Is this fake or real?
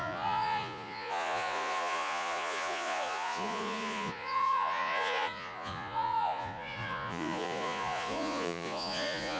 fake